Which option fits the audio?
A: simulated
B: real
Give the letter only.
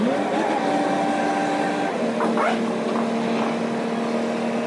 B